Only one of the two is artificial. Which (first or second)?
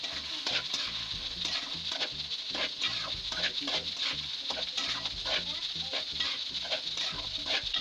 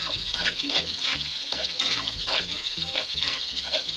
second